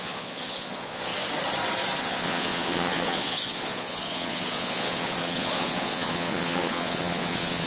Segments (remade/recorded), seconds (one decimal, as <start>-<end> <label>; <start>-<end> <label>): 0.0-1.1 remade; 1.1-2.0 recorded; 2.0-7.7 remade